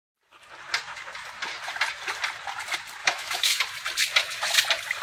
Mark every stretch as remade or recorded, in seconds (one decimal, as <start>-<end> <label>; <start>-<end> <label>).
0.0-3.0 recorded; 3.0-3.6 remade; 3.6-5.0 recorded